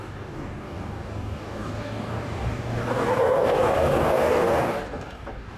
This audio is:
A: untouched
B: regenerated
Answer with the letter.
B